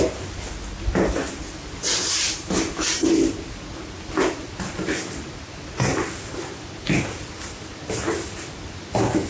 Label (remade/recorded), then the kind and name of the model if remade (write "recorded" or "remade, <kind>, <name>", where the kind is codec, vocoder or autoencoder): recorded